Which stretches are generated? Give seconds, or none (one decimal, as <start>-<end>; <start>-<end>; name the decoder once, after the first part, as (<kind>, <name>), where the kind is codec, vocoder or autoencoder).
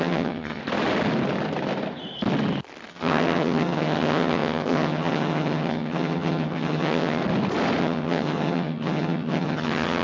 0.0-0.6 (vocoder, HiFi-GAN); 2.9-7.2; 7.8-10.0